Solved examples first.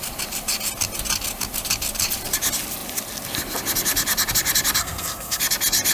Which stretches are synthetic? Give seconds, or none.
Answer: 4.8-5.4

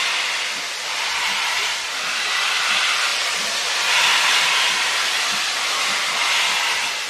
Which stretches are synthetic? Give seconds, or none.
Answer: none

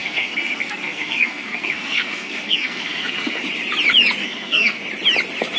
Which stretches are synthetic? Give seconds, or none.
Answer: 0.0-3.4; 4.2-4.8

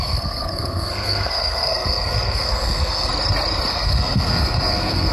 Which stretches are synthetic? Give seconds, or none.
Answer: 0.0-3.1; 3.7-5.1

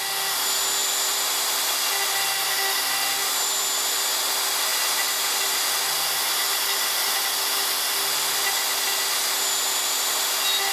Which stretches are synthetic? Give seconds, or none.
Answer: none